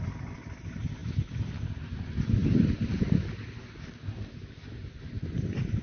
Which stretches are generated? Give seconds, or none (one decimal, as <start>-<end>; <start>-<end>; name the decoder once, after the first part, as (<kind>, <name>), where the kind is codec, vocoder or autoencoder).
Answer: none